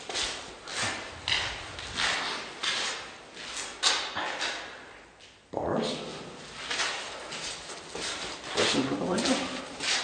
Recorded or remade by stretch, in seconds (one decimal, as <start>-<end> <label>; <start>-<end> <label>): 0.0-10.0 recorded